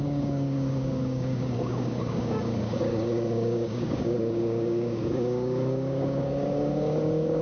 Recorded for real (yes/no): no